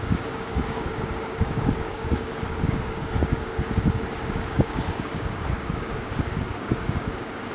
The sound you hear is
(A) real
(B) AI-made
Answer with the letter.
B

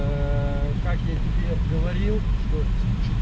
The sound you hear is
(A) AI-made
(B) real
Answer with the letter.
B